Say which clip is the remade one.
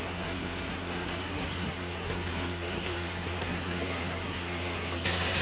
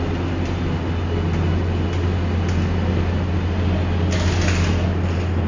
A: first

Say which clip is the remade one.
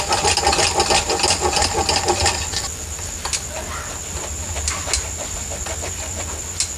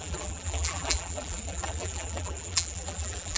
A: second